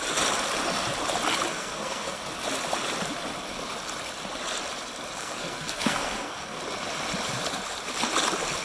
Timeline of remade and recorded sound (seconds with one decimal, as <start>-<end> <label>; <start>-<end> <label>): 0.0-1.5 recorded; 1.5-2.2 remade; 2.2-5.2 recorded; 5.2-6.6 remade; 6.6-8.6 recorded